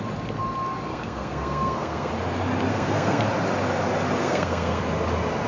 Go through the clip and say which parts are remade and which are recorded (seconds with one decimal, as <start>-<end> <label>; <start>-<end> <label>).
0.0-0.9 recorded; 0.9-2.1 remade; 2.1-2.7 recorded; 2.7-3.2 remade; 3.2-4.2 recorded; 4.2-4.8 remade; 4.8-5.5 recorded